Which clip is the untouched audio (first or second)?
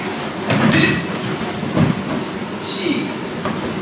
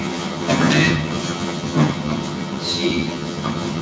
first